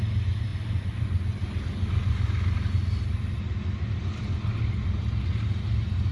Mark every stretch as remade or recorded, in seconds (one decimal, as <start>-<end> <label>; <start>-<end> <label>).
0.0-6.1 recorded